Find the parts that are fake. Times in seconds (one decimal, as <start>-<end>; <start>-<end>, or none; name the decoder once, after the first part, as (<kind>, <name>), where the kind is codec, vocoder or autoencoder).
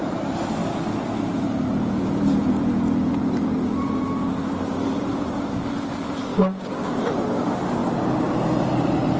6.3-7.1 (codec, DAC)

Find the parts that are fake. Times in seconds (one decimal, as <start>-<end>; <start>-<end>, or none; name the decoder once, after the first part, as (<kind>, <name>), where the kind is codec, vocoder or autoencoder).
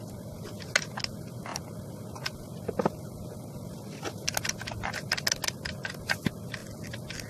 none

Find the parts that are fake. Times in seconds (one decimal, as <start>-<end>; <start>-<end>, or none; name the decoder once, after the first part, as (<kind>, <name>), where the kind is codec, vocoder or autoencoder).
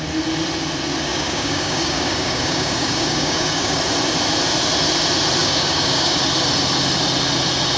1.1-3.8 (codec, DAC); 5.4-6.2